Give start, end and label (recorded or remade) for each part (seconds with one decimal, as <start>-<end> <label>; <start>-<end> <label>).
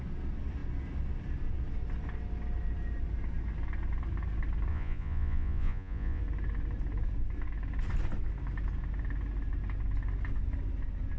0.0-4.7 recorded; 4.7-6.2 remade; 6.2-11.2 recorded